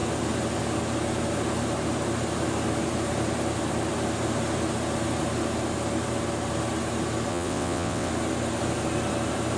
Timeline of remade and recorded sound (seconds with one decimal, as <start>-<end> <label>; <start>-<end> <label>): 0.0-7.3 recorded; 7.3-8.1 remade; 8.1-9.6 recorded